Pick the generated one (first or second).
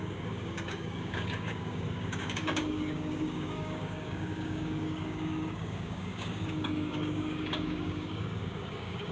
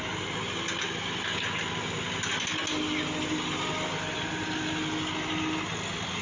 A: first